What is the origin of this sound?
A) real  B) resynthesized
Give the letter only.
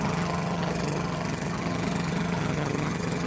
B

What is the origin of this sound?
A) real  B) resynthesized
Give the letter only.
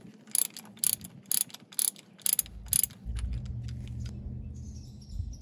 A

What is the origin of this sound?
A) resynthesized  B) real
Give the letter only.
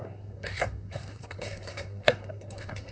A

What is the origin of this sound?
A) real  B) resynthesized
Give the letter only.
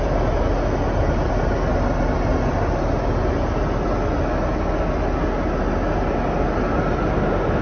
A